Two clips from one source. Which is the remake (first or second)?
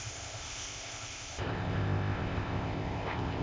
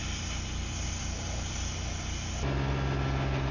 first